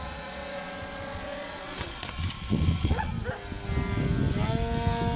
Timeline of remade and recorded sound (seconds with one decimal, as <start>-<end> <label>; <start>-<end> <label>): 0.0-3.1 remade; 3.1-5.2 recorded